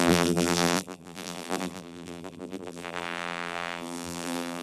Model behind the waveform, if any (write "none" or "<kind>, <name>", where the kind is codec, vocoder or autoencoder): vocoder, BigVGAN v2